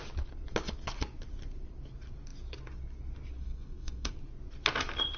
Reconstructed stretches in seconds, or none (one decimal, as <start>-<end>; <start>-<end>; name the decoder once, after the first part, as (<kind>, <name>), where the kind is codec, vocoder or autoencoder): 3.4-4.1 (codec, SNAC)